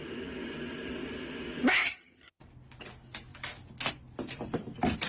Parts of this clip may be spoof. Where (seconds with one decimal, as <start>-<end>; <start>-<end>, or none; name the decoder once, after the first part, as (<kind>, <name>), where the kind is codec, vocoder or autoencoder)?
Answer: 1.8-2.4 (vocoder, HiFi-GAN)